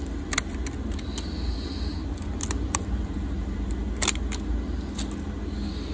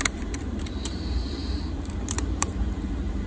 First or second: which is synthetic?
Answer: second